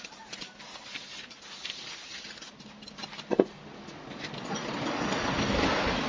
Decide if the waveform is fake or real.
real